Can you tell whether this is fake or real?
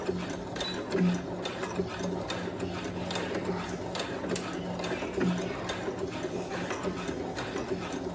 real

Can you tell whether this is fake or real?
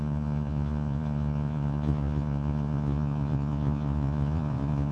fake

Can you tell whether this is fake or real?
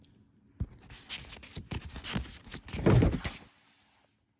real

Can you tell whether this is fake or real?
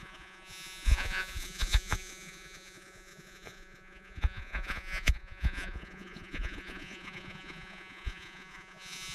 fake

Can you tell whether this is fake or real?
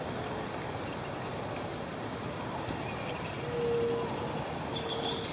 real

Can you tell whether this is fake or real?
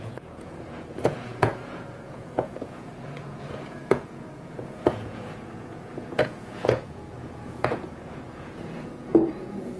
fake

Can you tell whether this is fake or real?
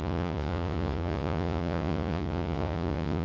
fake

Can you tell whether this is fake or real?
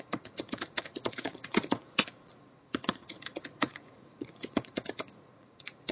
fake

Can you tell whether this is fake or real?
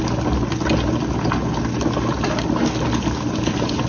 real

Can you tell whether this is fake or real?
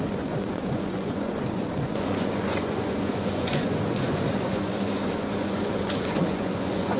fake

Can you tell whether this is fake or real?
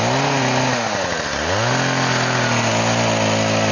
real